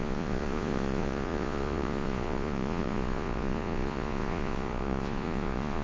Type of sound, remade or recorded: remade